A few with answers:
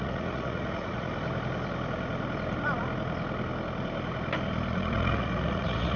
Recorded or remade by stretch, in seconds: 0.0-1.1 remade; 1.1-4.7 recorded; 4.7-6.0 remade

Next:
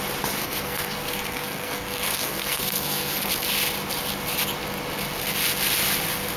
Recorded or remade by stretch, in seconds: 0.0-0.4 recorded; 0.4-3.3 remade; 3.3-6.4 recorded

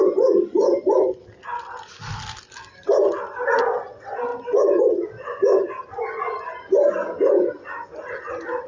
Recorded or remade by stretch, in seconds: 0.0-8.7 recorded

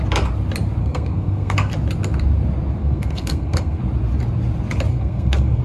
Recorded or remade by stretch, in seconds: 0.0-0.8 recorded; 0.8-1.7 remade; 1.7-2.8 recorded; 2.8-3.8 remade; 3.8-4.9 recorded; 4.9-5.6 remade

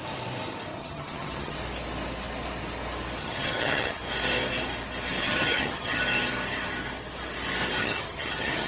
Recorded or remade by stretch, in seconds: 0.0-0.8 recorded; 0.8-1.6 remade; 1.6-3.2 recorded; 3.2-4.0 remade; 4.0-5.2 recorded; 5.2-6.0 remade; 6.0-7.8 recorded; 7.8-8.7 remade

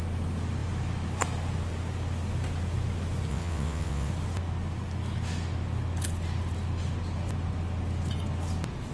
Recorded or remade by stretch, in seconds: 0.0-3.3 recorded; 3.3-4.1 remade; 4.1-8.9 recorded

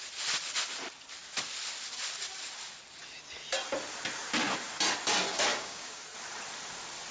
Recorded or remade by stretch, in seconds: 0.0-5.5 recorded; 5.5-6.0 remade; 6.0-7.1 recorded